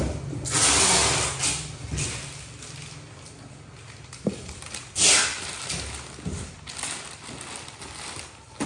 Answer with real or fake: real